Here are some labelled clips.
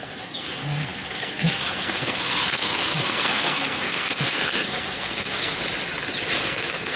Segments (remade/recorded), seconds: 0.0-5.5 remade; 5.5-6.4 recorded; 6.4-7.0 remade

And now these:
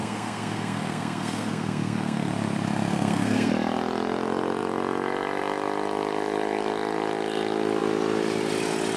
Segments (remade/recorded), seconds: 0.0-2.3 remade; 2.3-2.9 recorded; 2.9-3.5 remade; 3.5-9.0 recorded

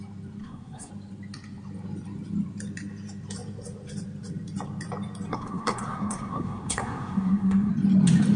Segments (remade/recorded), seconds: 0.0-0.4 recorded; 0.4-0.9 remade; 0.9-5.3 recorded; 5.3-7.7 remade; 7.7-8.4 recorded

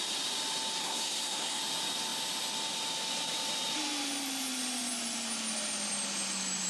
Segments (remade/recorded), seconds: 0.0-0.8 recorded; 0.8-1.6 remade; 1.6-6.7 recorded